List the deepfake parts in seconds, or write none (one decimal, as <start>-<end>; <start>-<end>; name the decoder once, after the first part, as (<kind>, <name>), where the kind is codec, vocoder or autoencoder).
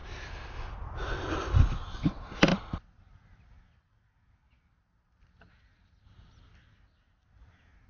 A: none